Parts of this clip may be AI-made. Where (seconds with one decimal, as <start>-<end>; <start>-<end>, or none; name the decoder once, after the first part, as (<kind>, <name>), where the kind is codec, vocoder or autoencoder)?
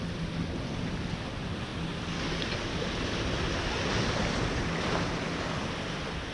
none